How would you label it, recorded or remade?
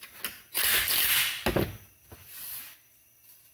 recorded